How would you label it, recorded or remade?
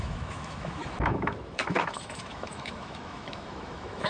remade